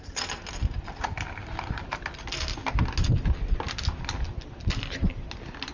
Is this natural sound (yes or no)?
yes